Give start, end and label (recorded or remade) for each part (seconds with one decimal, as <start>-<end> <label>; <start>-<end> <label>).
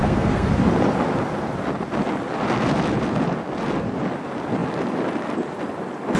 0.0-0.5 remade; 0.5-6.2 recorded